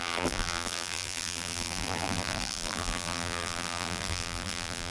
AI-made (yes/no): yes